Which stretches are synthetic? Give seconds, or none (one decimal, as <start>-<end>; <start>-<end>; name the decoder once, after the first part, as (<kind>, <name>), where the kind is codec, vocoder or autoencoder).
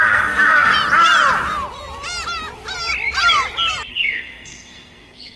0.0-0.7 (codec, SNAC); 3.9-5.4